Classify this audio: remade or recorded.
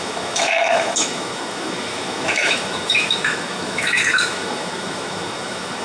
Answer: remade